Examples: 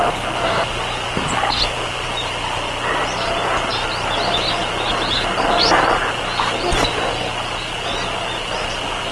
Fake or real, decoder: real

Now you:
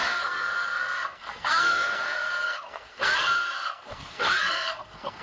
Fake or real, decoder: fake, codec, SNAC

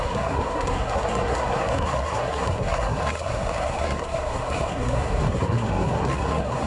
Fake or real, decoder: fake, codec, SNAC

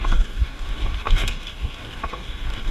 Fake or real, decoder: fake, codec, DAC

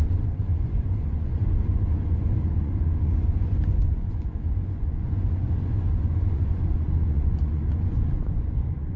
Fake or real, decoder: fake, vocoder, Vocos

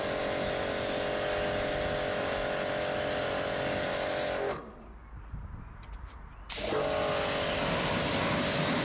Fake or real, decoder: real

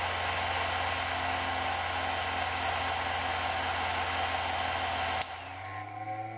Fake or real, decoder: real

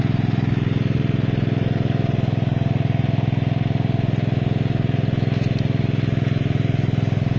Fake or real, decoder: real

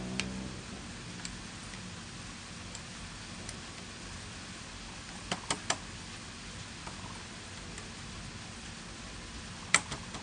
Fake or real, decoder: real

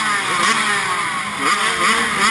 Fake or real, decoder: real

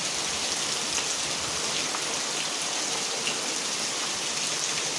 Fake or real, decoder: real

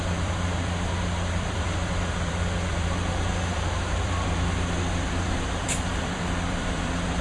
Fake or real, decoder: fake, vocoder, BigVGAN v2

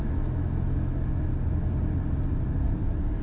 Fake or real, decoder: real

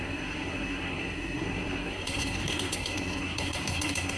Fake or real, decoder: fake, codec, SNAC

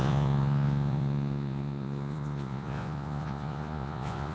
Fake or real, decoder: fake, vocoder, Vocos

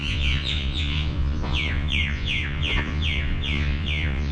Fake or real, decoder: fake, vocoder, Vocos